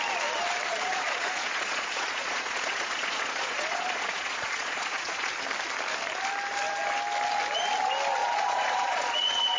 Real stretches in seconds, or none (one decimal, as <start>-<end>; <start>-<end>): 0.0-0.7; 5.3-8.2